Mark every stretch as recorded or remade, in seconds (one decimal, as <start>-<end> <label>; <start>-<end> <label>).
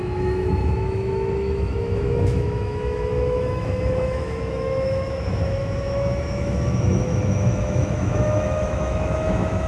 0.0-9.7 remade